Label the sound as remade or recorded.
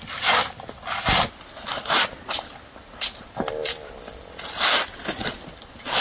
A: recorded